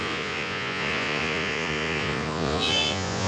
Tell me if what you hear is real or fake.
fake